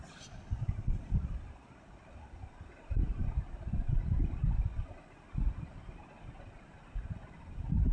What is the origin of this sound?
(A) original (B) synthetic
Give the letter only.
A